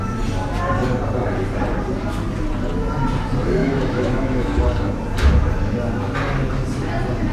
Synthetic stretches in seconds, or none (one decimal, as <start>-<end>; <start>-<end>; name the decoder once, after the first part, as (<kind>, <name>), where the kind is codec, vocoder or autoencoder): 3.6-4.6 (autoencoder, DAC-VAE)